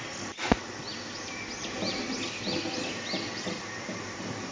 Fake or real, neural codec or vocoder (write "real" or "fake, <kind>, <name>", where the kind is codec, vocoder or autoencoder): real